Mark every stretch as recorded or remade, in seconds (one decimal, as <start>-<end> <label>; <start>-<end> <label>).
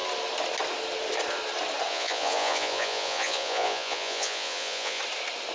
0.0-1.9 recorded; 1.9-5.0 remade; 5.0-5.5 recorded